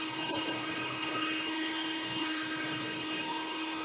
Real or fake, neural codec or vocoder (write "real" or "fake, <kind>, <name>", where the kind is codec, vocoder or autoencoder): fake, codec, HILCodec